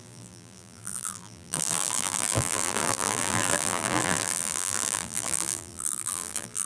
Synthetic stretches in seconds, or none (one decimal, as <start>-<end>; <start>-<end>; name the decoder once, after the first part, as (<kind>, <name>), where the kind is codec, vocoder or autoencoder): 0.0-6.7 (vocoder, BigVGAN v2)